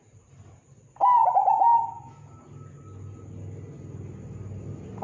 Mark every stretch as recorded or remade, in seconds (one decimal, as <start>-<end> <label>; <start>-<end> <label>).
0.0-5.0 recorded